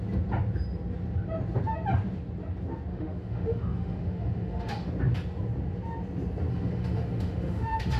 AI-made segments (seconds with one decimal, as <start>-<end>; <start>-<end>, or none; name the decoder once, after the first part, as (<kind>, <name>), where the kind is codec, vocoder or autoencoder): 2.9-4.9 (autoencoder, DAC-VAE); 6.5-8.0